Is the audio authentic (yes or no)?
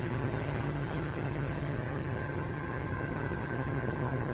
no